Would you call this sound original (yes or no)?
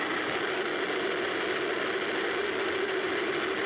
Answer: yes